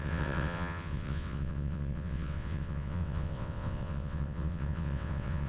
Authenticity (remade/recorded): remade